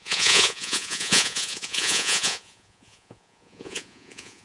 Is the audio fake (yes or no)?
yes